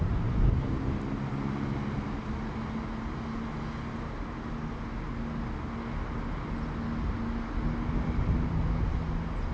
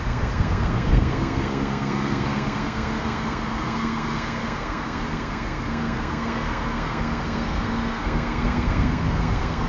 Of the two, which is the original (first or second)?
first